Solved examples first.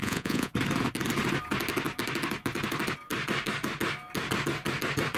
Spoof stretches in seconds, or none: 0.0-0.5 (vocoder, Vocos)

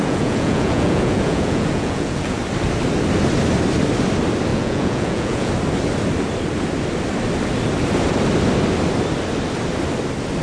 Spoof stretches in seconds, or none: 0.0-2.4 (vocoder, Vocos); 4.5-5.5

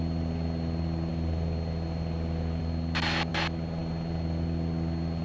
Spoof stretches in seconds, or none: none

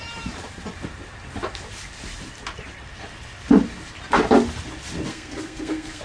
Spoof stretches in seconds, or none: 5.1-6.0 (codec, SNAC)